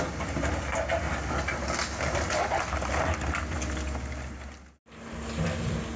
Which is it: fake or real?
real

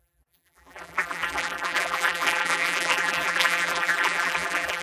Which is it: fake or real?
fake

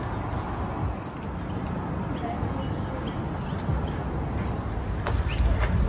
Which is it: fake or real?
real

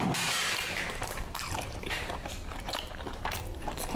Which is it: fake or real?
fake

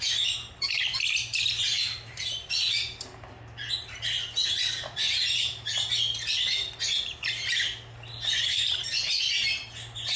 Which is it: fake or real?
real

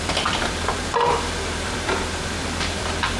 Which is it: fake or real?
fake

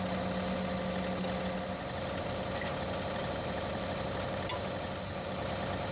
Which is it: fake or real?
real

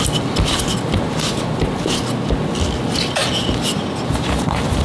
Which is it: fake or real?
real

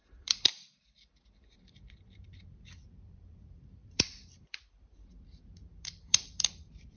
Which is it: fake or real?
fake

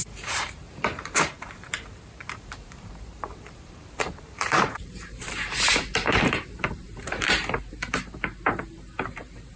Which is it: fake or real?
fake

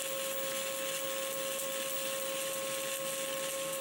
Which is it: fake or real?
real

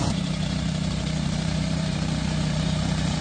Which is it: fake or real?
fake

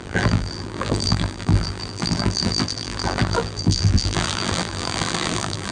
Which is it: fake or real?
fake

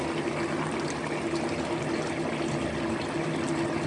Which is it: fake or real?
real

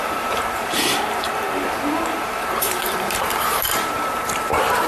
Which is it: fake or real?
fake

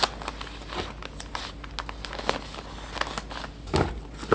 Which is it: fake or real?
real